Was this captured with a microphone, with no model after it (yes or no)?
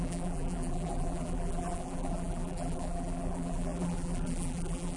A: no